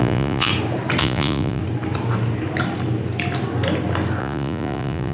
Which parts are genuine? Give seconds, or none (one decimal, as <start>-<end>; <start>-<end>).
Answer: 0.5-1.0; 1.6-4.2